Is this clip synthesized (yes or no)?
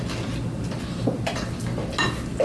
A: no